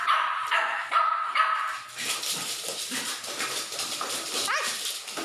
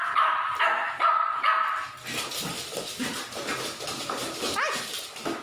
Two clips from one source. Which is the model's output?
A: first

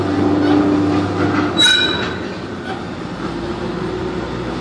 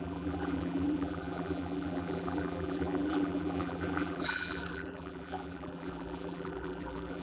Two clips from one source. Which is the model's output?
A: second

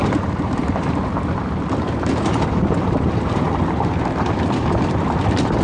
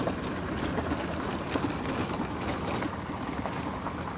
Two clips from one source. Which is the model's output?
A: first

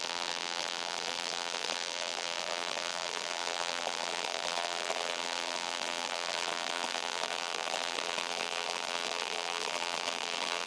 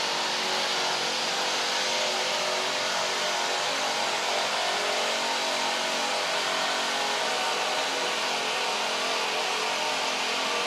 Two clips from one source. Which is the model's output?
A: first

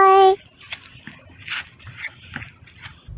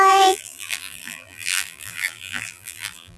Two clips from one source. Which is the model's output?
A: second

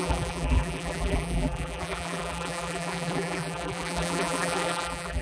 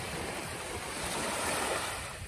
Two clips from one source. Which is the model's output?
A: first